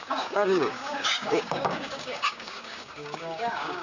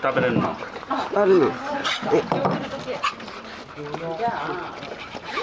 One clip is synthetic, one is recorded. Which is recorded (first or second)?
second